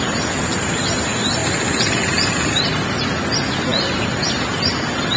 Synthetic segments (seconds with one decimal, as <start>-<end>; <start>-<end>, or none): none

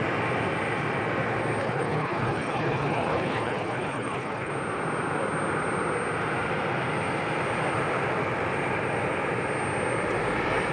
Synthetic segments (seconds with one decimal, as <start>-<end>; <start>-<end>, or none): 1.6-4.5

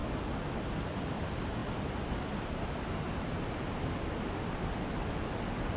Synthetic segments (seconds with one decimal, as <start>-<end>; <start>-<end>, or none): none

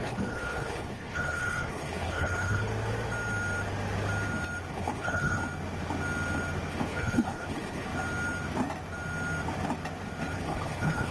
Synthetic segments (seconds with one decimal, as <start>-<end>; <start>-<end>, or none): 0.0-2.7; 4.7-5.4; 6.7-7.9; 10.3-11.1

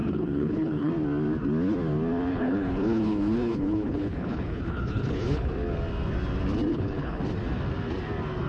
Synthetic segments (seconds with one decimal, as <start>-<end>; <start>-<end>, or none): 0.0-0.9; 2.3-5.5; 6.7-7.2

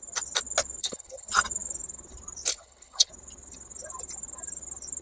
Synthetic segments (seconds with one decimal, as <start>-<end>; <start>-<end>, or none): 0.8-1.3; 2.5-3.1

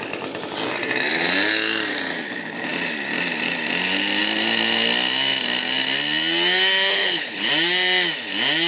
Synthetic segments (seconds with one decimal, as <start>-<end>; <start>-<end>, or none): 6.9-7.5